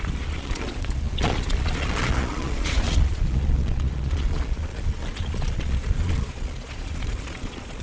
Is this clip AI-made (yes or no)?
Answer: yes